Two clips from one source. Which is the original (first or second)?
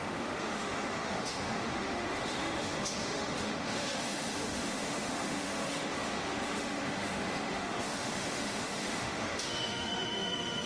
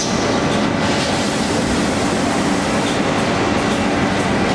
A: second